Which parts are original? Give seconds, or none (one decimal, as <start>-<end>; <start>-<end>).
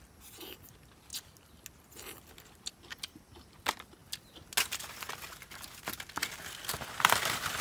0.0-7.6